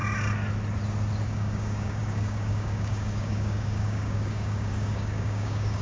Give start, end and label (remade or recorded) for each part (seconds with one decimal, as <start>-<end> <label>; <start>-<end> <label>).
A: 0.0-1.3 recorded; 1.3-5.8 remade